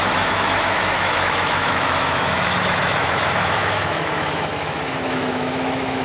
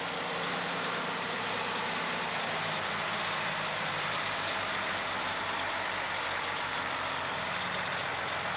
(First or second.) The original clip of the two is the second